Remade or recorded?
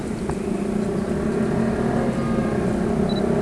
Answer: recorded